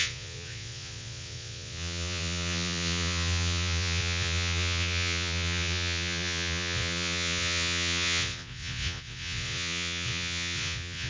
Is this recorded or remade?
remade